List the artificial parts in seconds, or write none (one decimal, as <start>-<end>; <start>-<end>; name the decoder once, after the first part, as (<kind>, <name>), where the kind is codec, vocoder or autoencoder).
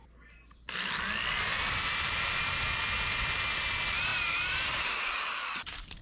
1.5-2.4 (vocoder, BigVGAN v2); 4.1-4.9